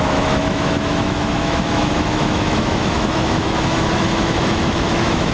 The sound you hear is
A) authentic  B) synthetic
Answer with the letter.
B